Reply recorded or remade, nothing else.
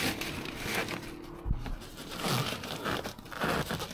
recorded